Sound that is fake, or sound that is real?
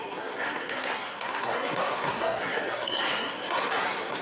fake